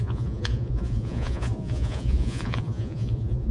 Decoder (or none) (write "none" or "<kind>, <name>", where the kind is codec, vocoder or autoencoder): vocoder, Vocos